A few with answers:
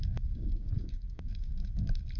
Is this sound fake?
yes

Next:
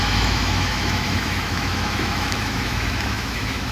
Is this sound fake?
yes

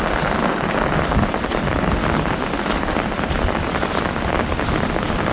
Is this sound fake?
no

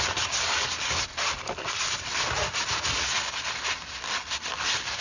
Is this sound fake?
no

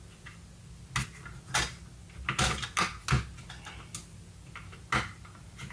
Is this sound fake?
no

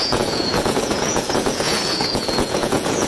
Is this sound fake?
yes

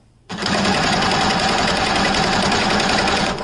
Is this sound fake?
yes